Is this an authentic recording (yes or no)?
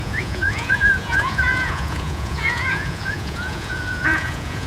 no